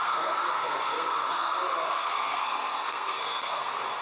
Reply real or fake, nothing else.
fake